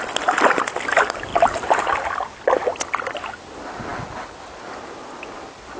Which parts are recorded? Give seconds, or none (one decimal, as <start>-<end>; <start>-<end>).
0.0-5.8

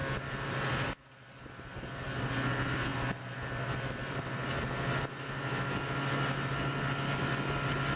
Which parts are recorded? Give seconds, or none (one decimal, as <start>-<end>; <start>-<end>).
0.0-8.0